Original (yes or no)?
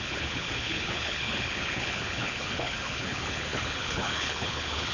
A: no